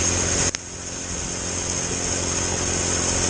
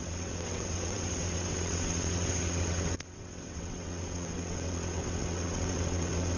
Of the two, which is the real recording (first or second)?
first